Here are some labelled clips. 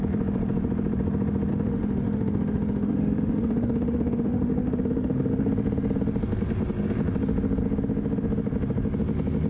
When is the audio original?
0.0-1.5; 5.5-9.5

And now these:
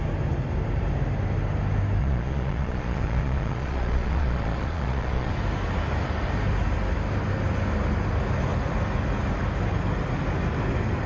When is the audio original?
0.0-2.0; 5.3-11.1

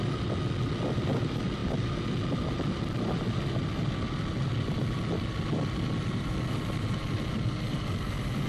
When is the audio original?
0.0-8.5